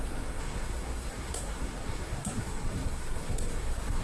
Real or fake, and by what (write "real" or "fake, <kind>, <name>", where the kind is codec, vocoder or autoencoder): fake, codec, SNAC